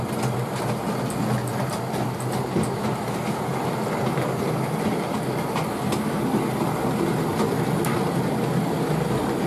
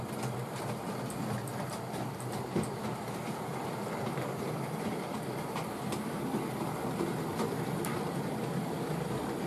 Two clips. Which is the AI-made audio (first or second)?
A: second